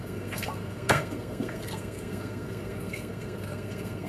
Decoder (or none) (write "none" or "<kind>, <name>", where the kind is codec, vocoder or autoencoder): codec, SNAC